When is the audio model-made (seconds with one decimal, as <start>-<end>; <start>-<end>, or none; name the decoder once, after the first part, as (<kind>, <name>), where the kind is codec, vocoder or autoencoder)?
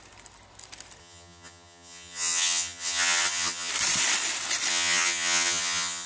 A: 1.0-3.7 (vocoder, HiFi-GAN); 4.7-6.1